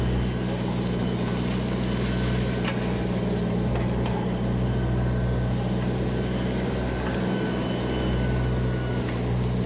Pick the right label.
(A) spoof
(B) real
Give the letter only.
B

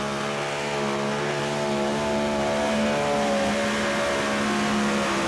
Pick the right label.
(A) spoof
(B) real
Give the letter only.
B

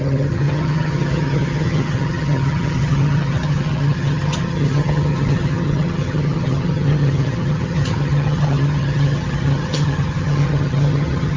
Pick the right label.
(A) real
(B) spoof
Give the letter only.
B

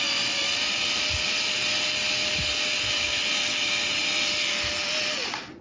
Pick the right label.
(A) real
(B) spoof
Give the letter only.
A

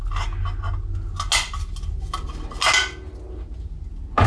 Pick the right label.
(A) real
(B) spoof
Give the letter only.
A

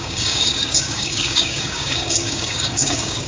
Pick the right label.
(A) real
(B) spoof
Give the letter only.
B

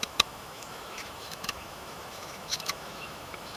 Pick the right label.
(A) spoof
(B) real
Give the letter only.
A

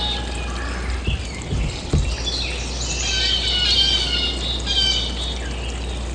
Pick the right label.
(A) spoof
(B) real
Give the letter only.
B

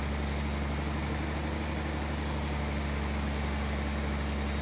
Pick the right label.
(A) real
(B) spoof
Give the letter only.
A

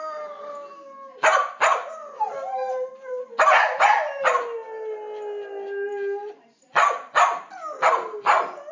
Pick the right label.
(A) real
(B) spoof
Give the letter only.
A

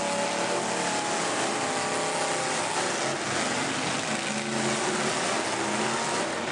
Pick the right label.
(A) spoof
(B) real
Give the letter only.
B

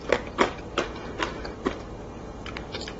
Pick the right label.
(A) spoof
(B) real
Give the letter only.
B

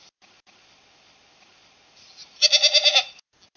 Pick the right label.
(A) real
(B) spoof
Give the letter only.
A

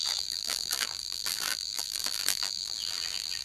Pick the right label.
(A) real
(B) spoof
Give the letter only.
B